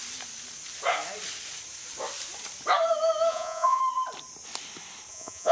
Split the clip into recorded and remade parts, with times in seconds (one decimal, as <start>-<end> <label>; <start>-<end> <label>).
0.0-3.3 recorded; 3.3-3.8 remade; 3.8-5.1 recorded; 5.1-5.5 remade